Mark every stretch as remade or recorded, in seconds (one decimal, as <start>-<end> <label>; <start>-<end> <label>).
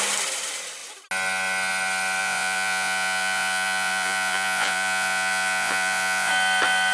0.0-2.2 recorded; 2.2-6.3 remade; 6.3-6.9 recorded